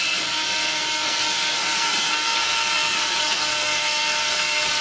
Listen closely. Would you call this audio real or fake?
fake